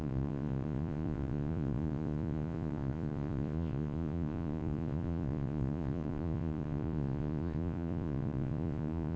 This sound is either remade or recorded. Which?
remade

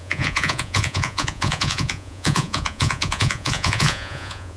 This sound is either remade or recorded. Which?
remade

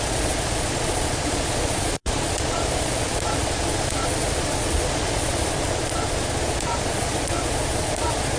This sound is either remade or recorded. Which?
remade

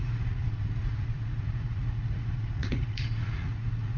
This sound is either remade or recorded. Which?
remade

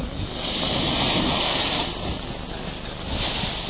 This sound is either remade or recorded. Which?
recorded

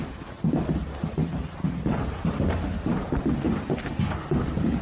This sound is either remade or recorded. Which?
recorded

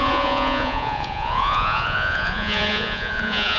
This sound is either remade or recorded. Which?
remade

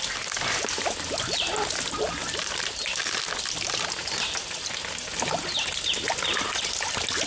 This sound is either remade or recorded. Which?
recorded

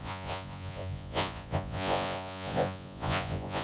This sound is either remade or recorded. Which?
remade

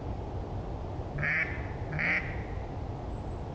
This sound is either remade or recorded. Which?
recorded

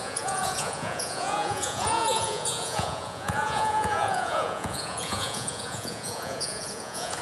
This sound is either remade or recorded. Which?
remade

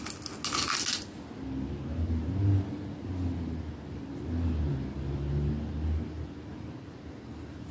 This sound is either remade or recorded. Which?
recorded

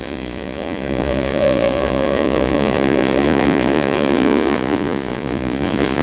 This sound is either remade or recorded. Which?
remade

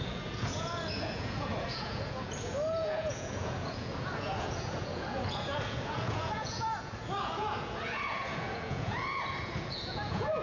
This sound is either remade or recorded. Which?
remade